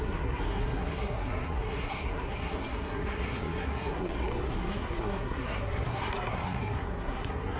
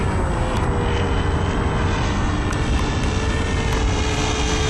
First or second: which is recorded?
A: second